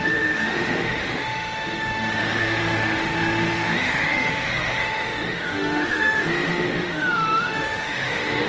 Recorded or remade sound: remade